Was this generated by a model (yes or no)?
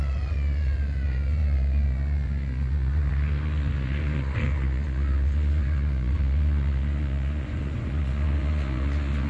yes